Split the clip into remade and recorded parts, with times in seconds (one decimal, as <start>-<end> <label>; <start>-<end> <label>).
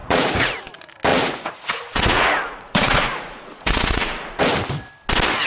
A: 0.0-0.6 remade; 0.6-1.1 recorded; 1.1-4.4 remade; 4.4-5.5 recorded